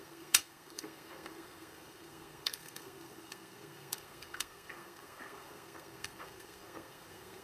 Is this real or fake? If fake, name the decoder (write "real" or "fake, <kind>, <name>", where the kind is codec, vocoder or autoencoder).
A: fake, codec, SNAC